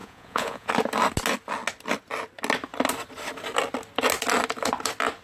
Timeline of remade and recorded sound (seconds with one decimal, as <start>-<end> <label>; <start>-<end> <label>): 0.0-0.7 remade; 0.7-5.2 recorded